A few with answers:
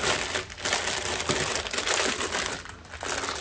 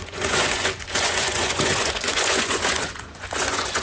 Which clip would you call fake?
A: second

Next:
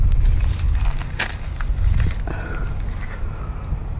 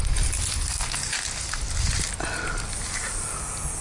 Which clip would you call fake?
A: first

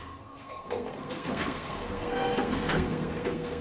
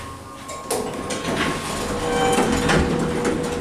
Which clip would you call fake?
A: first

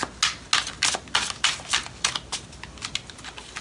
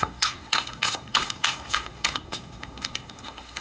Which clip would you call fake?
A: second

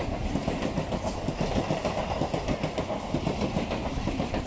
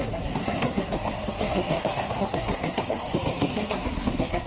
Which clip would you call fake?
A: second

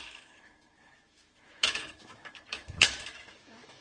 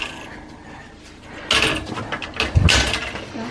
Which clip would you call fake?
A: first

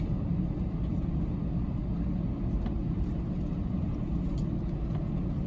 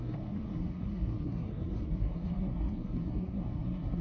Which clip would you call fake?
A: second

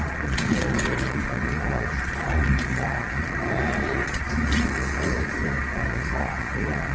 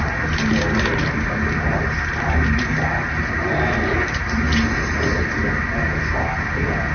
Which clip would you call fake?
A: first